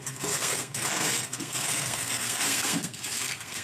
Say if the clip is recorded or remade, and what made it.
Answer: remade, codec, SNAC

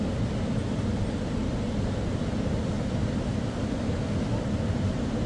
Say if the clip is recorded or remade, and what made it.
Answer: recorded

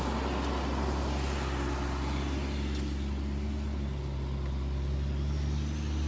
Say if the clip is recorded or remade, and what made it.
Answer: recorded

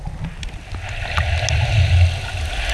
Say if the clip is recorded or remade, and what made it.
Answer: recorded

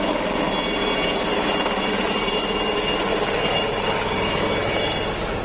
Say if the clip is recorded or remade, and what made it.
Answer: recorded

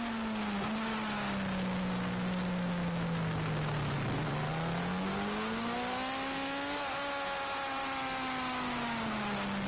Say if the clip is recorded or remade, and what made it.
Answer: recorded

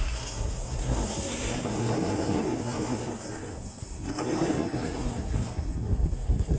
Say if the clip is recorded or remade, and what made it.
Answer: remade, codec, SNAC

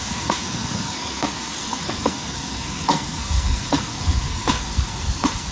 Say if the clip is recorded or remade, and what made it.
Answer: remade, codec, SNAC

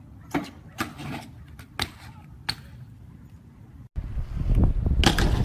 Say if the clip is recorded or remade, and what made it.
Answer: recorded